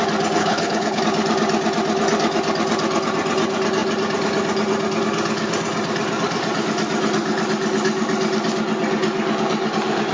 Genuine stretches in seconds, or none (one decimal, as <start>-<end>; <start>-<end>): 0.0-0.4; 1.0-10.1